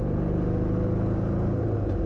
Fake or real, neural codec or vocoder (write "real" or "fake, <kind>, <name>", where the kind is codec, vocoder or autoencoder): real